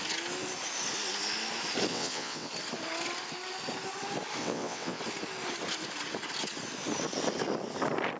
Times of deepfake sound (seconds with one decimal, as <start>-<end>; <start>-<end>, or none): 1.9-2.5; 4.4-5.0